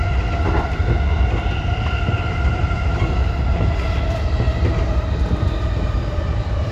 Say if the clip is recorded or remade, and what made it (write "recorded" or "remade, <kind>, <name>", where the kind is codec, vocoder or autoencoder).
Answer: recorded